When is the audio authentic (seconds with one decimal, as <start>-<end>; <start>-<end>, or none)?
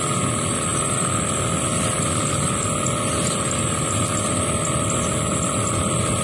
0.0-6.2